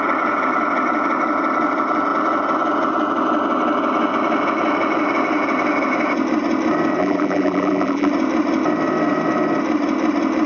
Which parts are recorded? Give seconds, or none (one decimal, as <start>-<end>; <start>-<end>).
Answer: 0.0-7.0; 8.1-10.5